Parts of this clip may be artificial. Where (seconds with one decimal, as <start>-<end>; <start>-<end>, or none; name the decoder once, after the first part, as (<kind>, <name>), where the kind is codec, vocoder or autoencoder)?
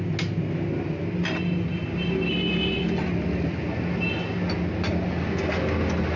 none